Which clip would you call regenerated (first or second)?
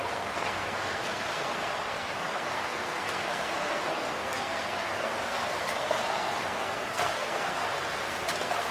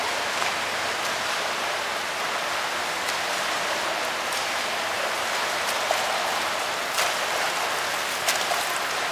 first